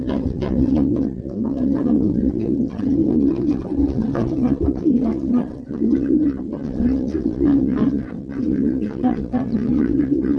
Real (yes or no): no